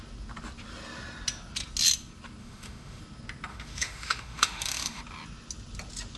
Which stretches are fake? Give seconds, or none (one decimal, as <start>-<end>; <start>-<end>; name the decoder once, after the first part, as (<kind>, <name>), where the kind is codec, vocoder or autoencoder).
2.4-3.0 (autoencoder, DAC-VAE); 3.5-5.0